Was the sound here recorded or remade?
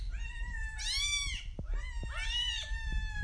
recorded